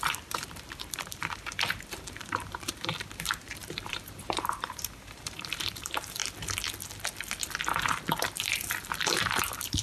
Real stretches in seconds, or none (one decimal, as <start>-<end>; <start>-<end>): 6.2-8.8